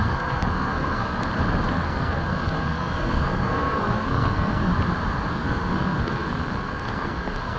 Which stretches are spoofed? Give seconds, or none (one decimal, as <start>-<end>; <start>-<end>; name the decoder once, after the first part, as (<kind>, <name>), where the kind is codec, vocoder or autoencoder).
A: 0.0-1.2 (codec, SNAC); 1.7-4.7; 5.3-7.6

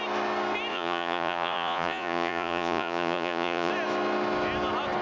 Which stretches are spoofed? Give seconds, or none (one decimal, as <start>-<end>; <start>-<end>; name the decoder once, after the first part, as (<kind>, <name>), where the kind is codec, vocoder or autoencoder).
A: 0.7-3.7 (vocoder, Vocos)

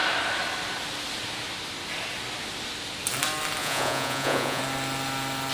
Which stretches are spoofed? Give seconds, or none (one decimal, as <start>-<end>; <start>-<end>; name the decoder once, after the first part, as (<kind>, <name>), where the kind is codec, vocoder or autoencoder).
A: 3.6-4.6 (vocoder, Vocos)

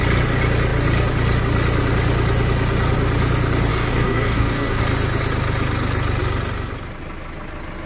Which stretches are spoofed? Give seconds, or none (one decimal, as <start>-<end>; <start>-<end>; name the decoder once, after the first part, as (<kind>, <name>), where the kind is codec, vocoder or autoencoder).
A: 3.7-4.8 (codec, DAC)

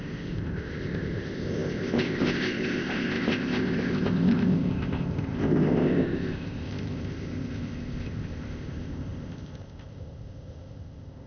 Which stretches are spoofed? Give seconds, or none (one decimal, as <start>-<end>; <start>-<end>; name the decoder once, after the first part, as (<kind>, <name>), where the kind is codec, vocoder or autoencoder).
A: 0.0-11.3 (codec, ZipCodec)

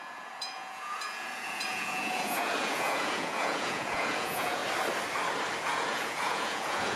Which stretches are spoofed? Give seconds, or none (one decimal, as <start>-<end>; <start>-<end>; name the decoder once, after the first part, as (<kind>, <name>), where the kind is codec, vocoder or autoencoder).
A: 0.0-4.6 (vocoder, Vocos); 5.6-7.0

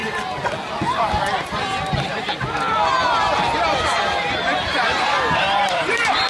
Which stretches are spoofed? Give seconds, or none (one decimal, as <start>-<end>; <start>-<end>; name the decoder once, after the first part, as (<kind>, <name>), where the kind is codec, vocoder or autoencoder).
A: 3.8-6.3 (vocoder, BigVGAN v2)